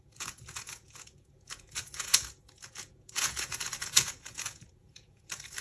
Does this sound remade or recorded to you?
remade